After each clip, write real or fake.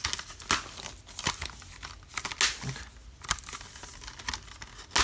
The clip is real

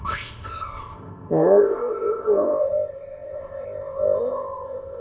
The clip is fake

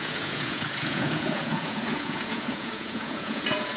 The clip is fake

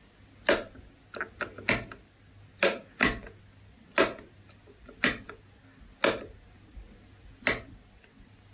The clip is real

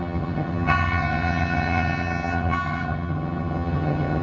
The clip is fake